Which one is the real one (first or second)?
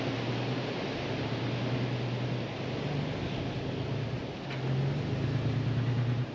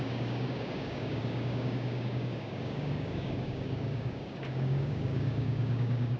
first